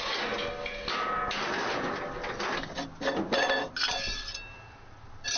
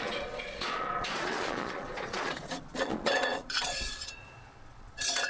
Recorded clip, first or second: first